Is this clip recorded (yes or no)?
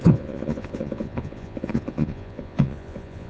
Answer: no